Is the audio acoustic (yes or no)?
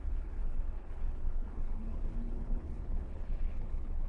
no